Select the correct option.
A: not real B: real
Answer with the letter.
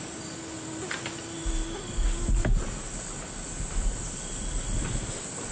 B